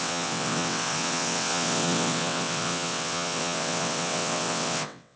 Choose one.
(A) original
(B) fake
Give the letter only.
B